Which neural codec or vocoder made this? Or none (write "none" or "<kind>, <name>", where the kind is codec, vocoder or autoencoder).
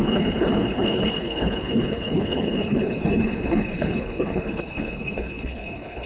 codec, HILCodec